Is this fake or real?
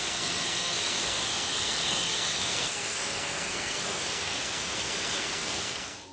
fake